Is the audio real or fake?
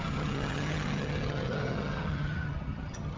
fake